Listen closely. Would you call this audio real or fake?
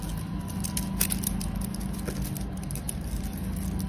real